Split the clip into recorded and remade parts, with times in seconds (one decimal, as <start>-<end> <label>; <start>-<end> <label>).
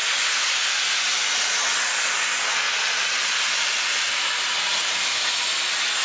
0.0-6.0 recorded